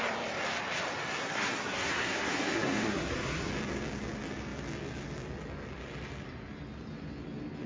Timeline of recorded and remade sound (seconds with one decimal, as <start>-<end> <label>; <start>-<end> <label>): 0.0-1.2 recorded; 1.2-3.5 remade; 3.5-7.7 recorded